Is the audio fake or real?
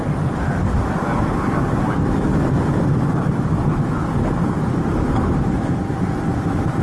real